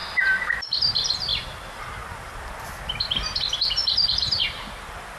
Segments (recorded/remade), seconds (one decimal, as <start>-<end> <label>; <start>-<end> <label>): 0.0-5.2 recorded